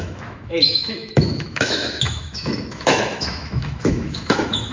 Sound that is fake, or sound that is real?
fake